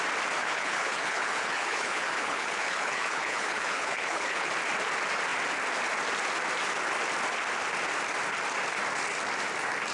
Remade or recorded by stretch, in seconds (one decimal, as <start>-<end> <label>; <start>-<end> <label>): 0.0-0.4 recorded; 0.4-4.5 remade; 4.5-9.9 recorded